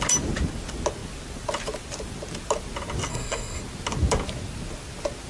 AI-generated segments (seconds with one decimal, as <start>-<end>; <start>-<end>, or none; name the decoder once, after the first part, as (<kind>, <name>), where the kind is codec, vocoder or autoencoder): 3.1-3.6 (codec, SNAC)